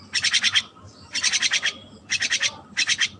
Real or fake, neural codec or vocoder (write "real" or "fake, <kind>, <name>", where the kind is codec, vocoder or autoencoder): fake, vocoder, BigVGAN v2